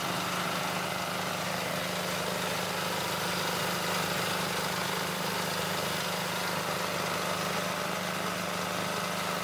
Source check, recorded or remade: recorded